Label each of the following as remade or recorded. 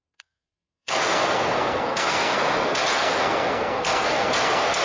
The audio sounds remade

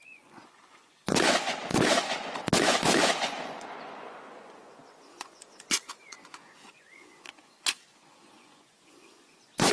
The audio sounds remade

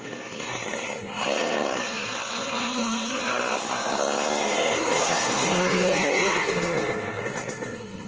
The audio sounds remade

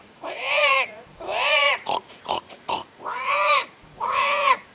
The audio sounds remade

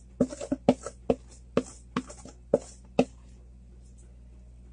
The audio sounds recorded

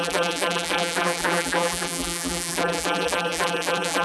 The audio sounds remade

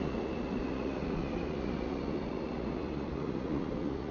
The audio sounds remade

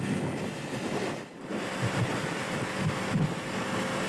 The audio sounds recorded